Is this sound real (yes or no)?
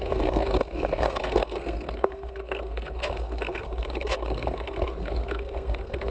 no